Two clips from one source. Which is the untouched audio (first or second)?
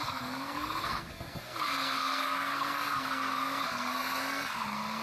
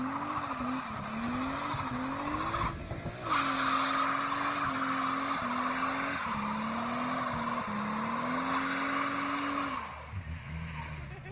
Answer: second